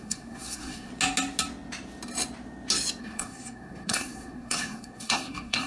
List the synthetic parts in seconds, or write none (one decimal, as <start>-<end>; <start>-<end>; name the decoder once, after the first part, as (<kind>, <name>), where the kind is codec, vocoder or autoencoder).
0.0-0.9 (codec, SNAC); 3.0-5.7